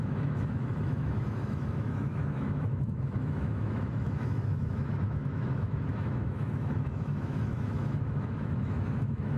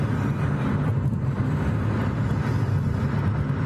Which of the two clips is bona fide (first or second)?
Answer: second